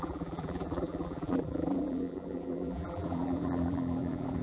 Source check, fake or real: fake